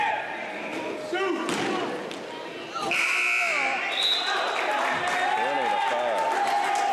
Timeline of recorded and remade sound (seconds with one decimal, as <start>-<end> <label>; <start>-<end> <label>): 0.0-6.9 recorded